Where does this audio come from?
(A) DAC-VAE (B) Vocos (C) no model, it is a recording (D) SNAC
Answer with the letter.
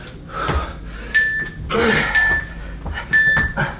C